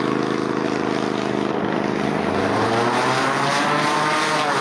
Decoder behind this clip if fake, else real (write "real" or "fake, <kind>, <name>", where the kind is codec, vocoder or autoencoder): real